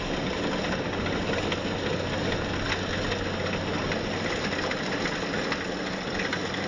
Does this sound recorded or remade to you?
recorded